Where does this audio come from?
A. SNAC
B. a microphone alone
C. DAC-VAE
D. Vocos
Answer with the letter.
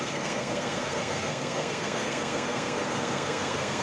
A